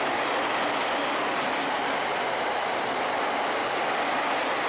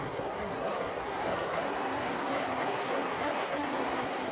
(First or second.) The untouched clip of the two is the first